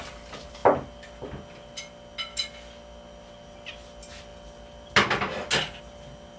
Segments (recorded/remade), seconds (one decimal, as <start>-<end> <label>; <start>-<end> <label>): 0.0-6.4 recorded